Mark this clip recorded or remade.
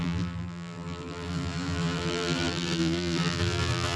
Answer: remade